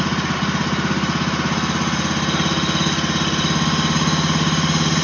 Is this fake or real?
real